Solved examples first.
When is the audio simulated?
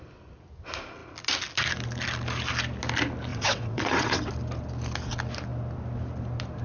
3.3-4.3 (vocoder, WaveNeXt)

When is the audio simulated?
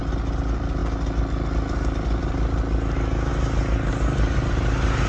none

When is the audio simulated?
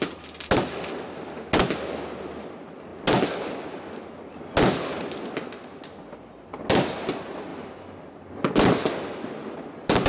none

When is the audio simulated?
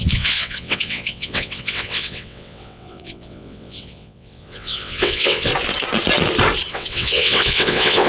0.0-5.5 (vocoder, WaveNeXt); 6.7-8.1